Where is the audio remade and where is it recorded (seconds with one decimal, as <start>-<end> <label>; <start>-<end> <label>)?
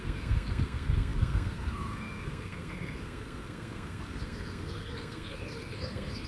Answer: 0.0-6.3 remade